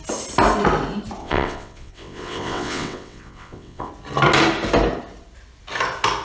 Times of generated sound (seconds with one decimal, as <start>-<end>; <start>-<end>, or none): 1.2-3.9